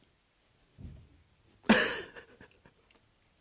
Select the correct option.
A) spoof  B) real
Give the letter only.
B